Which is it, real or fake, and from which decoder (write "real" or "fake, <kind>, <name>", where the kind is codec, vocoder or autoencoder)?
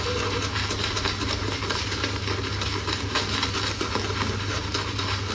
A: real